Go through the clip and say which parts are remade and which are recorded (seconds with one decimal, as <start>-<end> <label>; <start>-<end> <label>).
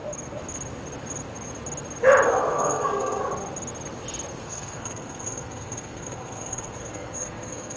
0.0-2.5 recorded; 2.5-3.2 remade; 3.2-4.4 recorded; 4.4-7.8 remade